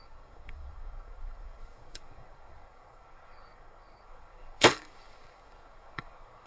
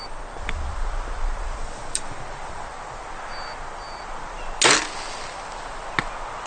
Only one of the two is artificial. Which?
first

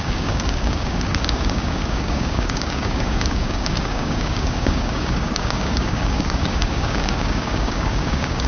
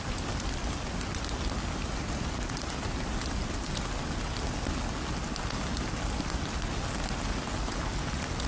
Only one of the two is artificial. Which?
first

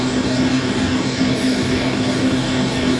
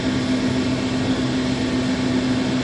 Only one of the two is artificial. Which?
first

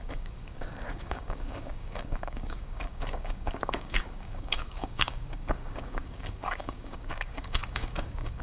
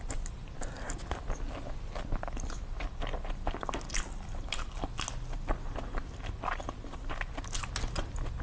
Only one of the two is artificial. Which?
first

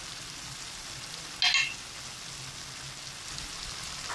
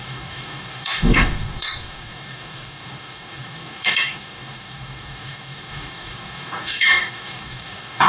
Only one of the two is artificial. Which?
second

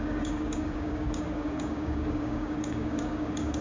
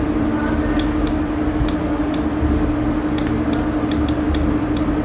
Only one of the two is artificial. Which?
first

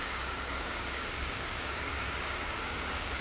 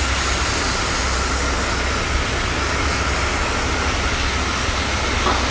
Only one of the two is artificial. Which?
first